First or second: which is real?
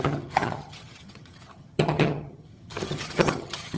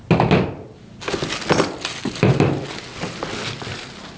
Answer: second